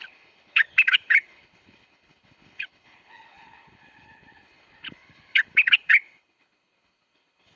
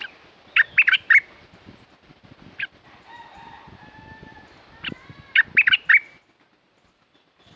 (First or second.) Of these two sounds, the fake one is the first